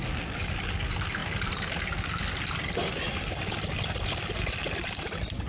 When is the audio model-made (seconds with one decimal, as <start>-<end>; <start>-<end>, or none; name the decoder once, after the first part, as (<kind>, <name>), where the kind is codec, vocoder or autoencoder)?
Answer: 1.2-1.8 (vocoder, BigVGAN v2)